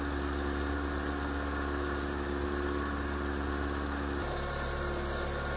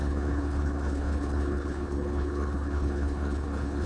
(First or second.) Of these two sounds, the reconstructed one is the second